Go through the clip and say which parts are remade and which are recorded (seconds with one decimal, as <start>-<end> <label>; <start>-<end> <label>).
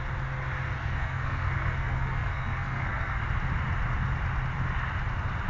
0.0-0.8 recorded; 0.8-3.2 remade; 3.2-5.5 recorded